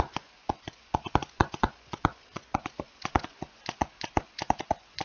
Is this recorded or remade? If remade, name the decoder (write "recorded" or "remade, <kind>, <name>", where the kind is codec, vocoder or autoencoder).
remade, vocoder, Vocos